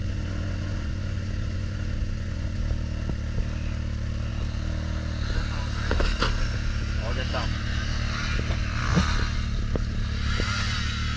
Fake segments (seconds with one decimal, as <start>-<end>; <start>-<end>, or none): 0.0-2.6